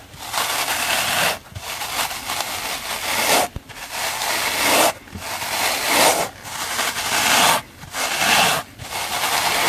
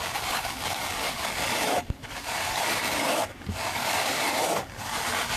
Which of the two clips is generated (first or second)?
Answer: second